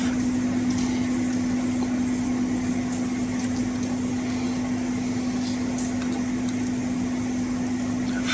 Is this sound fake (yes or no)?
no